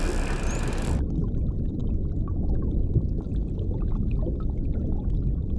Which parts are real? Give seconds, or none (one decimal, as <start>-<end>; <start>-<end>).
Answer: 0.0-5.6